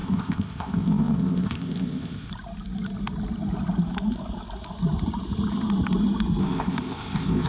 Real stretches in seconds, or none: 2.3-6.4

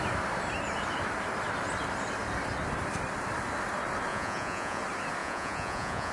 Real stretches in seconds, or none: 0.0-4.1; 4.8-5.2

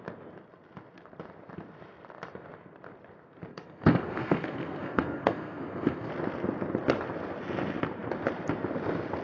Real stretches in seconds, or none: 0.0-3.5; 6.1-9.2

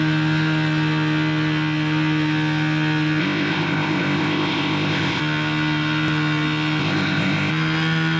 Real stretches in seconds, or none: 0.0-3.2; 5.2-6.8; 7.5-8.2

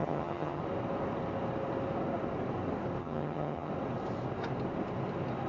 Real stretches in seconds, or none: 0.6-3.0; 3.7-5.5

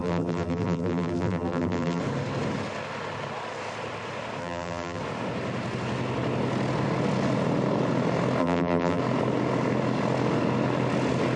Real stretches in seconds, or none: 2.0-4.4; 5.0-8.4; 9.0-11.4